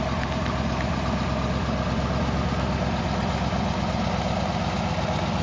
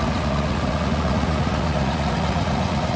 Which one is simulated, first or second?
second